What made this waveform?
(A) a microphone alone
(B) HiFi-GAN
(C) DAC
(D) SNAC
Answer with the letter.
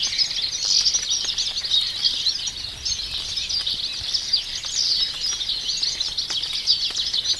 A